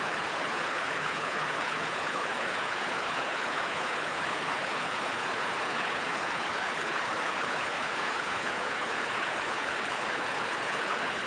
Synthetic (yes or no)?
yes